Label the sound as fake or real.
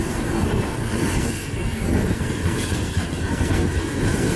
fake